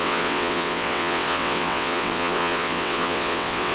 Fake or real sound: fake